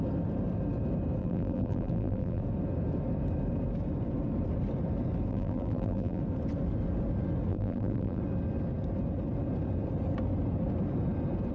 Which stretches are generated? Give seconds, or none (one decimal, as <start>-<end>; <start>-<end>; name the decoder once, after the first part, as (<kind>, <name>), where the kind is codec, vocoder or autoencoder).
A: 1.2-2.4 (vocoder, BigVGAN v2); 5.3-6.2; 7.5-8.2